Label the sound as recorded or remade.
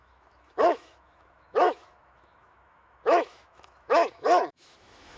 remade